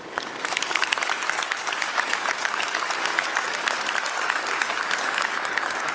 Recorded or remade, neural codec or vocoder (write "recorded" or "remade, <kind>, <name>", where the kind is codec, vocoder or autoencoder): remade, codec, DAC